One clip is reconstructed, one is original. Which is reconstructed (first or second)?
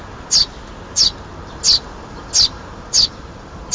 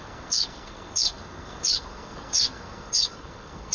second